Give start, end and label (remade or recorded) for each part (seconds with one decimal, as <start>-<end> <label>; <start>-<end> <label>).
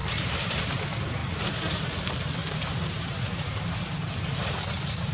0.0-0.6 remade; 0.6-1.2 recorded; 1.2-1.8 remade; 1.8-2.4 recorded; 2.4-5.1 remade